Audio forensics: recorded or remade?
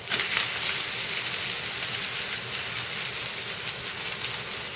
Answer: recorded